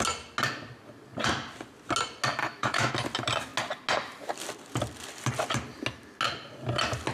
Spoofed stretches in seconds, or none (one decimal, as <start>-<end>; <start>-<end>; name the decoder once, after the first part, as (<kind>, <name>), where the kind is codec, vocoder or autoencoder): 2.4-2.9 (autoencoder, DAC-VAE)